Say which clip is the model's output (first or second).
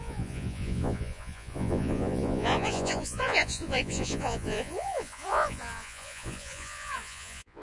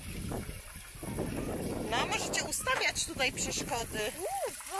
first